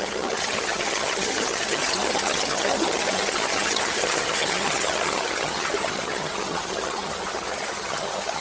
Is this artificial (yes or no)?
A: yes